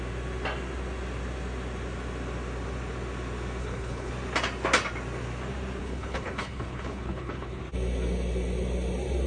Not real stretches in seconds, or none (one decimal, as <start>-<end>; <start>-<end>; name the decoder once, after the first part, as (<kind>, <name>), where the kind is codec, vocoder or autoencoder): 3.6-4.1 (codec, HILCodec); 5.8-7.6